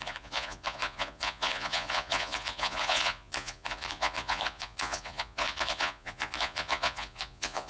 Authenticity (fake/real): fake